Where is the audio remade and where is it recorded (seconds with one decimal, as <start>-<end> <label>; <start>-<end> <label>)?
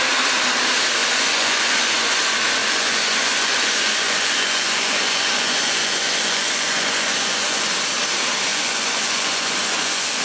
0.0-1.0 recorded; 1.0-2.2 remade; 2.2-2.6 recorded; 2.6-7.7 remade; 7.7-8.5 recorded; 8.5-10.2 remade